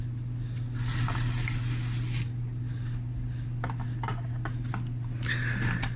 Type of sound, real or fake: real